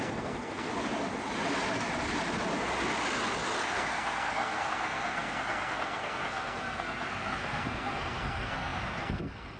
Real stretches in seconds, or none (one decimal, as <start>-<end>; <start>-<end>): 0.7-3.6